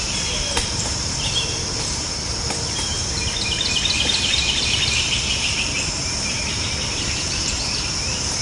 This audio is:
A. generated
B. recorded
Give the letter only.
A